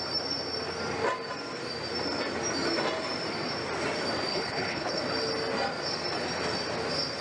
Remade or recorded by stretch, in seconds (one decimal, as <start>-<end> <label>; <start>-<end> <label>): 0.0-4.3 recorded; 4.3-5.0 remade; 5.0-7.2 recorded